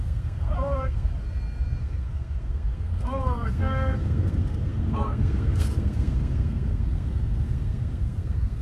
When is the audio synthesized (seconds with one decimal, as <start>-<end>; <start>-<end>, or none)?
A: 0.0-1.1; 1.8-8.6